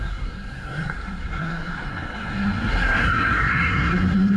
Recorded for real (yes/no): no